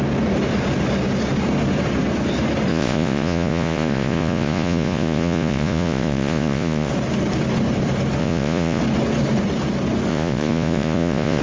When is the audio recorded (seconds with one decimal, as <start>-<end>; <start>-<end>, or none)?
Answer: 0.0-2.7; 6.9-8.2; 8.8-10.1